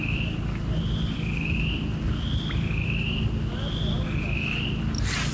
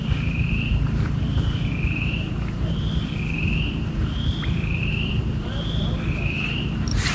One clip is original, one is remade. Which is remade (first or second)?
second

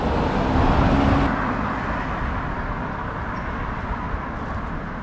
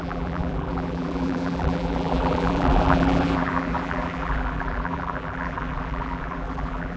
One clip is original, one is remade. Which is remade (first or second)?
second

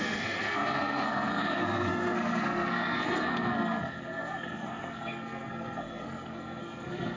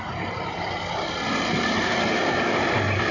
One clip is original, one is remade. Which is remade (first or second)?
first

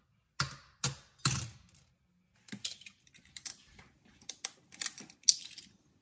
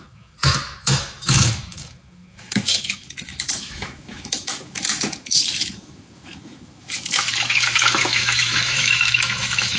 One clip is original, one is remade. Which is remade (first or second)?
second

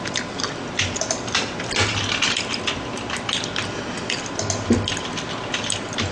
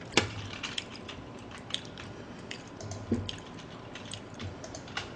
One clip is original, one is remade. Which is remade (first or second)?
second